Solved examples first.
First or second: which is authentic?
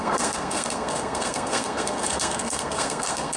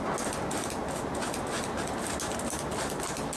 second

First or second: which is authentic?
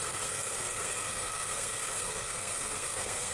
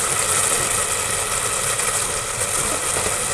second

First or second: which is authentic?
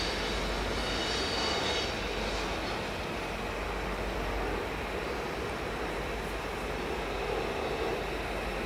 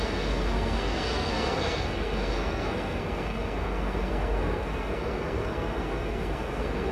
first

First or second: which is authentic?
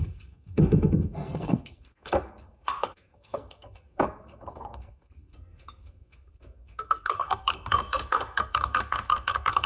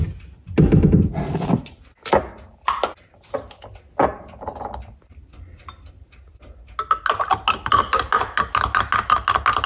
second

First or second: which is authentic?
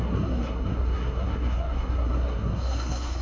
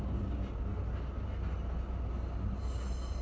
second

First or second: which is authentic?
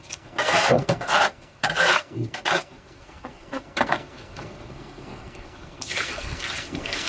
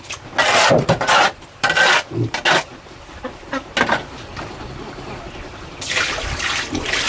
second